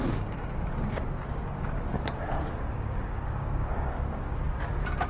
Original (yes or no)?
no